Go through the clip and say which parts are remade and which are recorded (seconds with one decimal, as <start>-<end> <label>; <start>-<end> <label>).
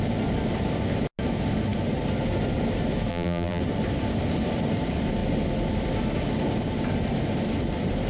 0.0-3.1 recorded; 3.1-3.6 remade; 3.6-8.1 recorded